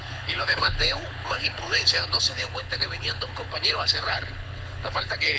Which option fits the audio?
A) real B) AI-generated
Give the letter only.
B